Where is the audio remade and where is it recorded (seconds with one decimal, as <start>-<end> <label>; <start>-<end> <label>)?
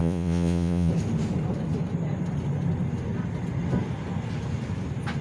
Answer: 0.0-0.9 remade; 0.9-5.2 recorded